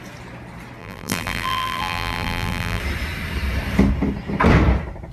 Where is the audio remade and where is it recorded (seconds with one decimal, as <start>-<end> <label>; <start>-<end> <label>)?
0.0-0.8 recorded; 0.8-2.8 remade; 2.8-5.1 recorded